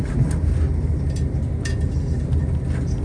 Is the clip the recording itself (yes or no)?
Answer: yes